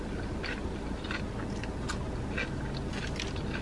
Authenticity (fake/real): real